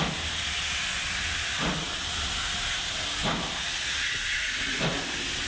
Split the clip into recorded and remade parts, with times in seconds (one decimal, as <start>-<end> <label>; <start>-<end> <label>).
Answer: 0.0-5.5 recorded